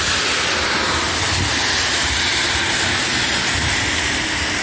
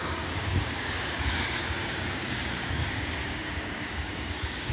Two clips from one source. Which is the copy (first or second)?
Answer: second